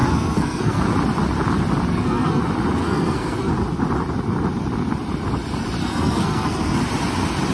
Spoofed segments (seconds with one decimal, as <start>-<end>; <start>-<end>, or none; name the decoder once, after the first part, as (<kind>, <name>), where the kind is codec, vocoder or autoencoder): 0.0-0.8 (codec, SNAC); 1.9-2.4; 2.8-3.5; 5.8-6.8